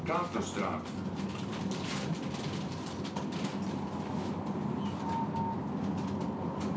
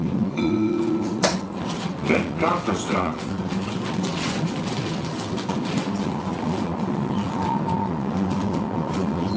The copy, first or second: second